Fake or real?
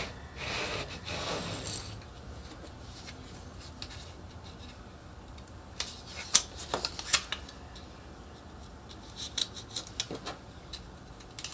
real